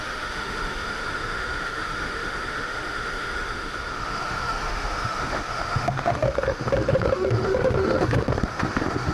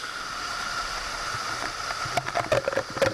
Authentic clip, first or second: second